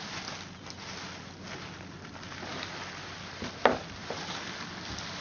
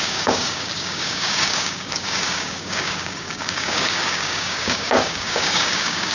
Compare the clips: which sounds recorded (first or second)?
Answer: first